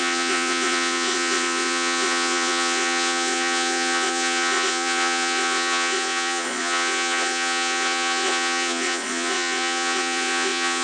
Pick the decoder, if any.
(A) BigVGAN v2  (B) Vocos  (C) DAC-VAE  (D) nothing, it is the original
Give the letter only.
B